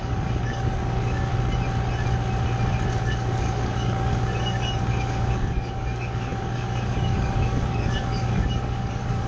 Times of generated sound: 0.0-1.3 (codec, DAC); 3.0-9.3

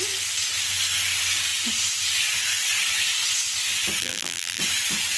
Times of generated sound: 4.0-4.6 (vocoder, BigVGAN v2)